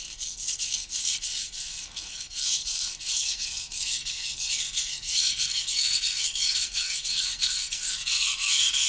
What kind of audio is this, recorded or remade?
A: remade